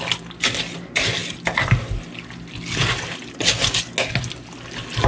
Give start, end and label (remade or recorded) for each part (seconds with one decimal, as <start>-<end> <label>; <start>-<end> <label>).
0.0-5.1 recorded